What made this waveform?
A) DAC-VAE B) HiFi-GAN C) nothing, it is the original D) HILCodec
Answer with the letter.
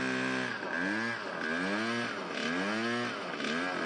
C